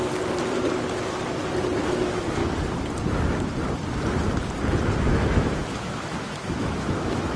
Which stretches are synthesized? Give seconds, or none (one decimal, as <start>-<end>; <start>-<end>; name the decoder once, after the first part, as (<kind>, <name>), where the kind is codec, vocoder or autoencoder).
1.9-2.4 (autoencoder, DAC-VAE); 5.1-7.4